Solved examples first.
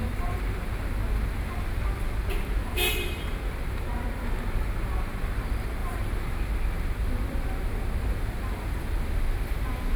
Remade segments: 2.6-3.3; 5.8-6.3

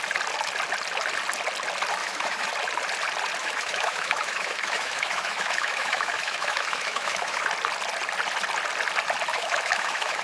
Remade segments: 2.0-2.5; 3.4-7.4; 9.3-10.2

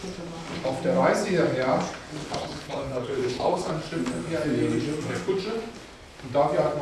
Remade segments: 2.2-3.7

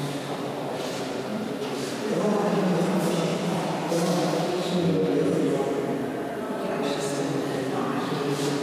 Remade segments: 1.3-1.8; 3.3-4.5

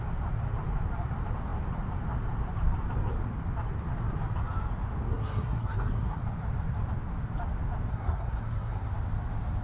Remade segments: 5.1-6.2; 7.9-8.9